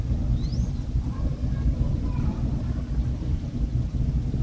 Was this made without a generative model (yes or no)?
yes